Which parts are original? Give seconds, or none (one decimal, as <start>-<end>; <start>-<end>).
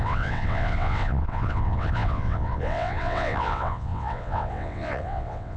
none